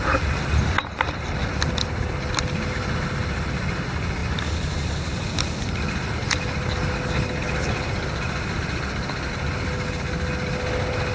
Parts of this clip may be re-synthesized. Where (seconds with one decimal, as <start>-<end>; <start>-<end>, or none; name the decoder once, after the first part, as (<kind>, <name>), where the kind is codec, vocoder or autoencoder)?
none